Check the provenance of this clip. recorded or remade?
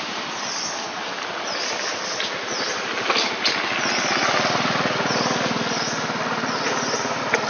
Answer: recorded